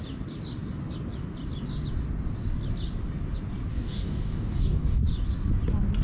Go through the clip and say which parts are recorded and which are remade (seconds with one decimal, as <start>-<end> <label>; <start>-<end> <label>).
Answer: 0.0-3.7 recorded; 3.7-5.0 remade; 5.0-6.0 recorded